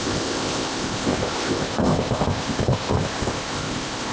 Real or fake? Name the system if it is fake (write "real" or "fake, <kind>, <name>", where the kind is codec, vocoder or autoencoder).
fake, codec, ZipCodec